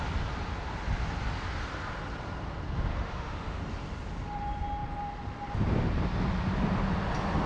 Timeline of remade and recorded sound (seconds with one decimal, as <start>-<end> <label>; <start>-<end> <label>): 0.0-2.9 recorded; 2.9-3.6 remade; 3.6-7.5 recorded